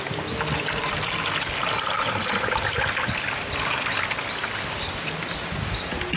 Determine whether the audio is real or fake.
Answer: real